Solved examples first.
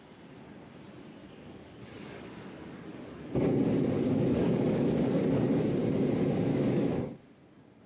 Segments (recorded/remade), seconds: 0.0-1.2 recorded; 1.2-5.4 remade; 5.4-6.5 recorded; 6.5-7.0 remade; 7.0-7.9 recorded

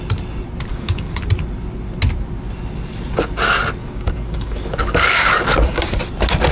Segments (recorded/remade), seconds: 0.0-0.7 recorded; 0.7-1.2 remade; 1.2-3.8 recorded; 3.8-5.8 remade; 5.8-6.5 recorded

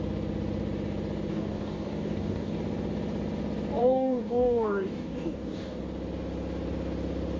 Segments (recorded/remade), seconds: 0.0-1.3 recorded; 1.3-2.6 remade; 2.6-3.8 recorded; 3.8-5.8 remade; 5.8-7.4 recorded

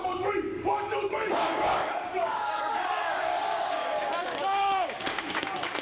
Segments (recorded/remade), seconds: 0.0-5.8 remade

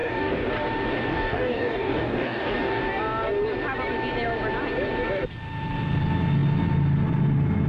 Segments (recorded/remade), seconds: 0.0-0.5 remade; 0.5-1.1 recorded; 1.1-2.8 remade; 2.8-7.7 recorded